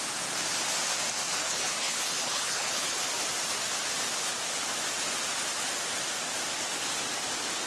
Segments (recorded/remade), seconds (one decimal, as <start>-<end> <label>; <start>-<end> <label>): 0.0-1.4 recorded; 1.4-3.0 remade; 3.0-7.7 recorded